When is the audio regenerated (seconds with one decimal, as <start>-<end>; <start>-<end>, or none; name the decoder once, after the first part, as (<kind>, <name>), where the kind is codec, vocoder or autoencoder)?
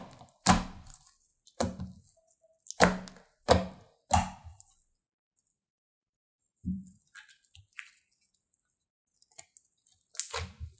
5.5-7.6 (vocoder, BigVGAN v2)